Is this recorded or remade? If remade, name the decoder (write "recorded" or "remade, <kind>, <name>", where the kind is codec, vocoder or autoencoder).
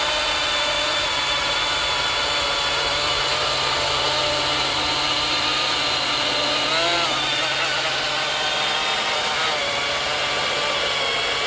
recorded